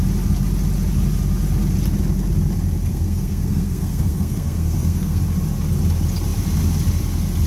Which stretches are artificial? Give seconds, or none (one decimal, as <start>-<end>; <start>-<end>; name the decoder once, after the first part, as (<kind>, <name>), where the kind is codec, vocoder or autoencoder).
2.9-5.2 (codec, SNAC)